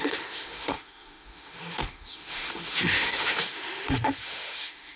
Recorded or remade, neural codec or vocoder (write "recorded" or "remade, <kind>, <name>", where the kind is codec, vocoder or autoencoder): remade, autoencoder, DAC-VAE